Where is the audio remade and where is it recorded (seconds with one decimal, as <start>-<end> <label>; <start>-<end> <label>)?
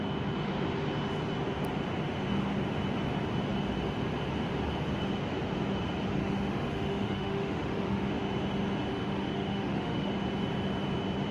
0.0-6.2 recorded; 6.2-8.1 remade; 8.1-8.9 recorded; 8.9-10.1 remade; 10.1-11.3 recorded